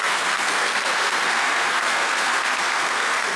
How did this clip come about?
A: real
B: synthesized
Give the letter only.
B